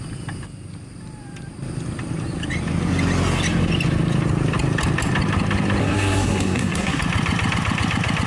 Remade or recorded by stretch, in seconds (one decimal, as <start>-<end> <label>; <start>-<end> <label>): 0.0-5.8 recorded; 5.8-7.0 remade; 7.0-8.3 recorded